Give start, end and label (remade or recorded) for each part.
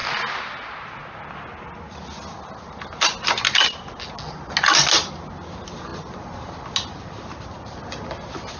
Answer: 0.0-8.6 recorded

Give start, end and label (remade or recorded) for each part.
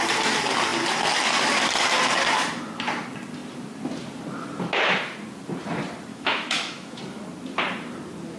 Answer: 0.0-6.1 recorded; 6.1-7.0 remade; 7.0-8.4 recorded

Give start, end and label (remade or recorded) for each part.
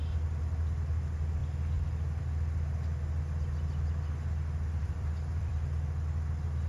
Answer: 0.0-4.8 recorded; 4.8-5.5 remade; 5.5-6.7 recorded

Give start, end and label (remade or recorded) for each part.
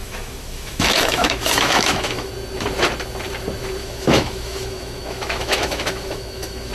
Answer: 0.0-2.3 remade; 2.3-3.8 recorded; 3.8-6.7 remade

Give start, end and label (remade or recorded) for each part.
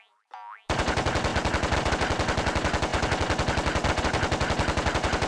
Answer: 0.0-5.3 recorded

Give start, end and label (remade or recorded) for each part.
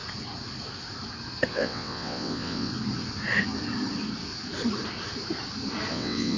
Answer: 0.0-1.5 recorded; 1.5-2.7 remade; 2.7-5.9 recorded; 5.9-6.4 remade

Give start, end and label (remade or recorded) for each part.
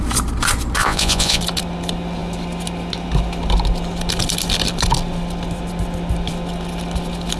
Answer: 0.0-0.8 recorded; 0.8-1.4 remade; 1.4-7.4 recorded